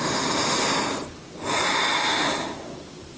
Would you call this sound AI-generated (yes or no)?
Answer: no